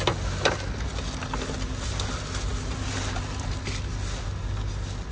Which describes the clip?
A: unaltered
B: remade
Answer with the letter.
A